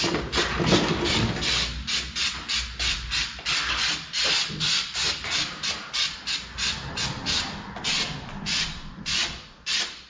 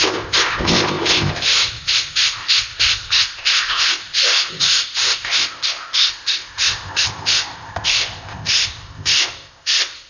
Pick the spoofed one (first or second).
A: second